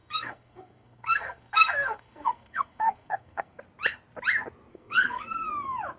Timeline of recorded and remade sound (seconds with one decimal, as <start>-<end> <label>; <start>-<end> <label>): 0.0-3.6 remade; 3.6-4.7 recorded; 4.7-5.5 remade; 5.5-6.0 recorded